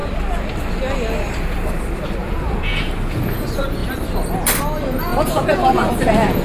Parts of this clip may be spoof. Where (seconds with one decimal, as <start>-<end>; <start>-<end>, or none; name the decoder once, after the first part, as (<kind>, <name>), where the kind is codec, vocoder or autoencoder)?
2.2-2.9 (vocoder, Vocos); 5.1-5.9